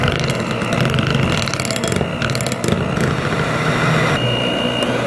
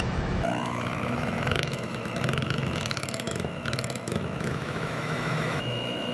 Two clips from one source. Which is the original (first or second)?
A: first